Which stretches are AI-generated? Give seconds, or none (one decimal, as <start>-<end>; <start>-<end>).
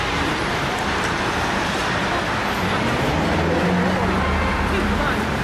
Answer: 0.0-1.8; 5.0-5.4